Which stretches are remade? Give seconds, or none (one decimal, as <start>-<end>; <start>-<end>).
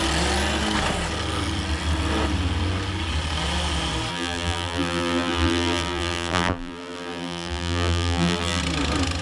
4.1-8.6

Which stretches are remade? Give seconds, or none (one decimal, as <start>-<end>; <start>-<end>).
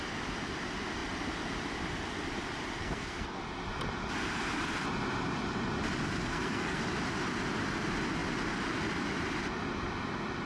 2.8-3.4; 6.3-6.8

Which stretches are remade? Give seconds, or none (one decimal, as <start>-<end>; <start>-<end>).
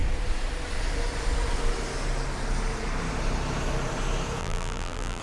4.4-5.2